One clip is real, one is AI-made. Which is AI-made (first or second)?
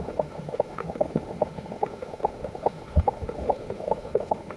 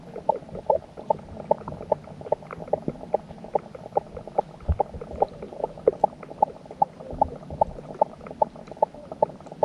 first